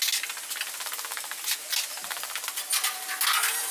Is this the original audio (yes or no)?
yes